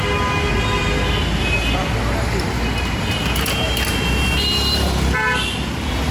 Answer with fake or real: real